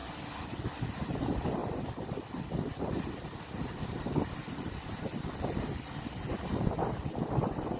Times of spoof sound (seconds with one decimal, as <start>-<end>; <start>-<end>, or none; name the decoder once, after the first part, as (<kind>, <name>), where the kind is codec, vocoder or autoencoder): none